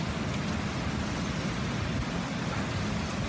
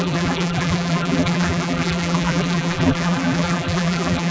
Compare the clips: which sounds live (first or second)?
first